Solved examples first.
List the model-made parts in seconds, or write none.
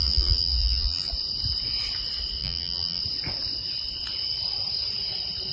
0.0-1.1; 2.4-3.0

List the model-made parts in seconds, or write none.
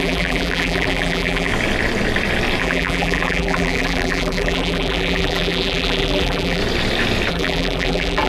0.0-1.5; 2.6-6.6; 7.3-8.3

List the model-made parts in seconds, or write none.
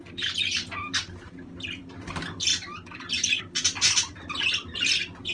0.0-5.3